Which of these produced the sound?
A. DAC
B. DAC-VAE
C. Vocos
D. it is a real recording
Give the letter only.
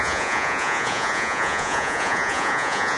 C